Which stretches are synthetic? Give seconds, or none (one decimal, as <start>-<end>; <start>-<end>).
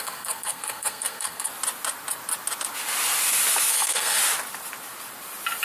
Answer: 0.0-1.5; 3.7-4.2